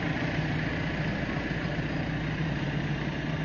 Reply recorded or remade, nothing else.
recorded